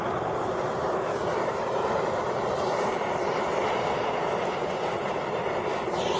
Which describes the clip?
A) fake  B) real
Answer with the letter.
A